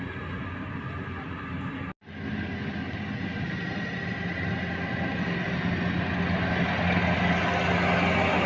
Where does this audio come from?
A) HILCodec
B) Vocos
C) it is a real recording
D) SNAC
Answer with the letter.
C